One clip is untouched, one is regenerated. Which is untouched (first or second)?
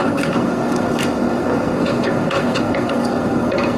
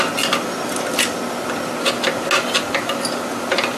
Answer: second